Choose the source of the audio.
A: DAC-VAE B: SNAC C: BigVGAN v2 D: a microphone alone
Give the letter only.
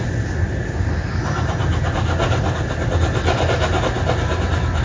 D